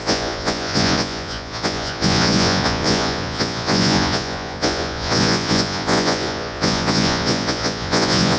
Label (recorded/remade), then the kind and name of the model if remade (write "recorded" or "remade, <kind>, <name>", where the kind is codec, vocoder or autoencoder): remade, vocoder, Vocos